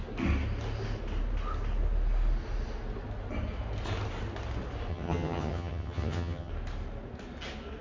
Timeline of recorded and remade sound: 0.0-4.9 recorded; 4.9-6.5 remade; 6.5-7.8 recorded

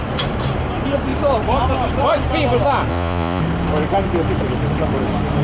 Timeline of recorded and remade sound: 0.0-2.9 recorded; 2.9-3.4 remade; 3.4-5.4 recorded

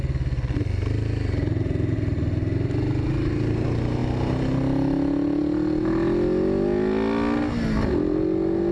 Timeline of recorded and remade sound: 0.0-8.7 recorded

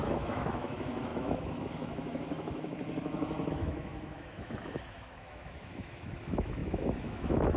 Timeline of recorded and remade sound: 0.0-7.6 remade

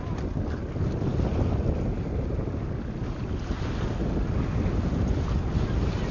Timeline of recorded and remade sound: 0.0-6.1 recorded